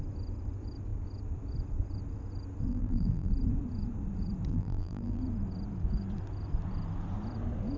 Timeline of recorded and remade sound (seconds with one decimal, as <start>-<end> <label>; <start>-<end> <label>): 0.0-2.7 recorded; 2.7-3.3 remade; 3.3-4.5 recorded; 4.5-5.2 remade; 5.2-7.8 recorded